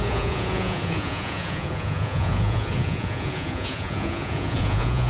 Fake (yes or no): yes